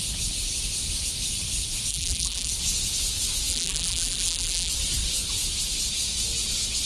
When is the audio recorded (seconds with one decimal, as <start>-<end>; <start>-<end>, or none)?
0.0-1.9; 2.5-3.5; 4.7-6.9